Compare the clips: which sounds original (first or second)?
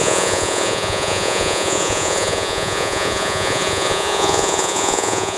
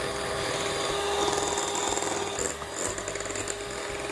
second